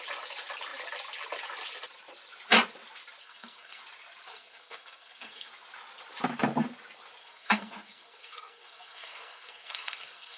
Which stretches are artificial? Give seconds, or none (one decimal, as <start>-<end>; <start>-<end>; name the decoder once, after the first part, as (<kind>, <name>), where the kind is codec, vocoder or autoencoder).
3.2-3.8 (codec, SNAC); 4.3-5.5; 7.2-10.4